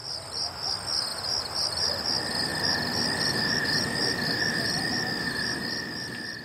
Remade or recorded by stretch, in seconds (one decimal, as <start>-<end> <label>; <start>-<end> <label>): 0.0-6.4 recorded